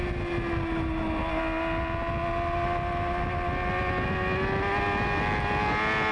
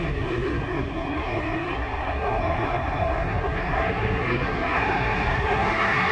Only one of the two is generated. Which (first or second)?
second